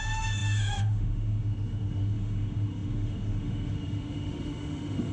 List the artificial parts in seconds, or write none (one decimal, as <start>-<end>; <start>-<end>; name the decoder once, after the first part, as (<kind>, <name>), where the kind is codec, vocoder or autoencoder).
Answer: 0.0-5.1 (autoencoder, DAC-VAE)